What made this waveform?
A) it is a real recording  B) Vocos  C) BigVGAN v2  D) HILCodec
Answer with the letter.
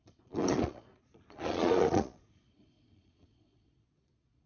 B